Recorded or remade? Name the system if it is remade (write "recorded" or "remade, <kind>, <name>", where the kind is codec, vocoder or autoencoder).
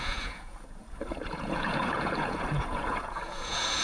remade, vocoder, Vocos